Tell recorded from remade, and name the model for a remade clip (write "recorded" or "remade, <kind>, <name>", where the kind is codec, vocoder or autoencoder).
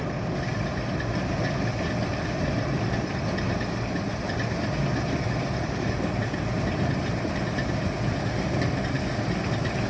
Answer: recorded